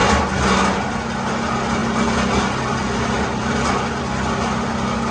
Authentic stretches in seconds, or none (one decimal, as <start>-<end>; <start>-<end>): 0.0-1.8